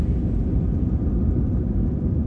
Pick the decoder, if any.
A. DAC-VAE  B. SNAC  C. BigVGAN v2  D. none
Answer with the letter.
D